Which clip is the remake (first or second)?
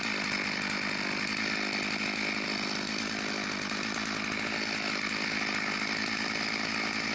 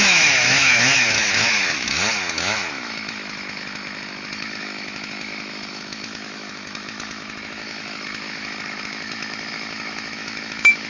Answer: second